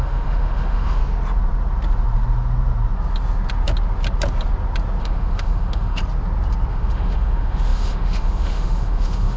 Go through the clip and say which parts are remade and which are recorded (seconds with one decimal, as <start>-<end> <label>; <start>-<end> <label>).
0.0-1.0 remade; 1.0-5.0 recorded; 5.0-6.0 remade; 6.0-6.7 recorded; 6.7-9.4 remade